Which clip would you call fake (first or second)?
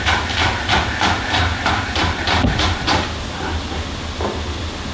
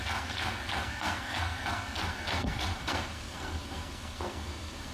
second